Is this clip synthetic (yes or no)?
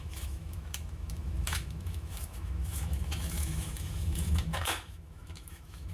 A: yes